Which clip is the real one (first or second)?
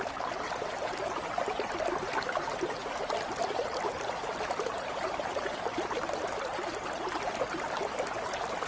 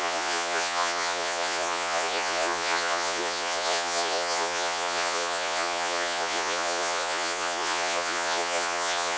first